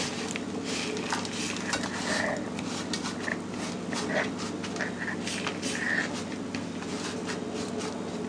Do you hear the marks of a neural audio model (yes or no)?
no